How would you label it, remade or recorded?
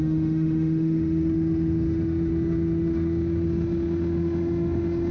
remade